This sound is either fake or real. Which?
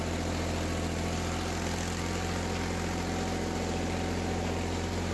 real